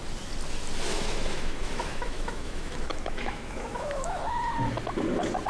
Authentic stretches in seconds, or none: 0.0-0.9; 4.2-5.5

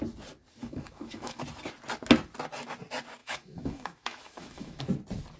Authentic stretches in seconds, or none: 0.0-0.6; 1.4-3.2; 4.8-5.4

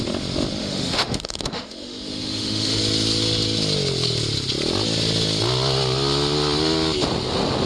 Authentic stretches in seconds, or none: 0.0-0.6; 2.8-7.7

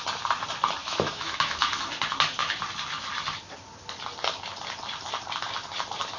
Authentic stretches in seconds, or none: 0.0-0.8; 1.7-6.2